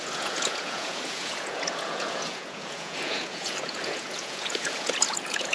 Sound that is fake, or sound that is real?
fake